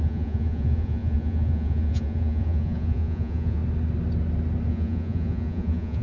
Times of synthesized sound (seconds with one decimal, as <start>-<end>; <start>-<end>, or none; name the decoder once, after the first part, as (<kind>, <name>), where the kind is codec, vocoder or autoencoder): 0.0-3.6 (vocoder, Vocos); 4.7-6.0